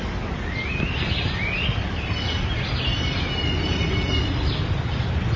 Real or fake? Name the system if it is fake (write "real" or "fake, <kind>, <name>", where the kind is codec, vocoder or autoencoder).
real